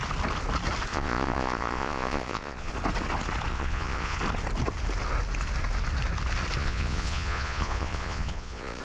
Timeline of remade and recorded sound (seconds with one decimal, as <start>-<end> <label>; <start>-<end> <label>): 0.0-0.9 recorded; 0.9-2.7 remade; 2.7-3.5 recorded; 3.5-4.2 remade; 4.2-6.6 recorded; 6.6-8.8 remade